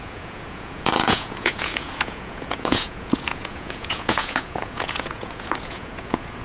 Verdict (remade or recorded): remade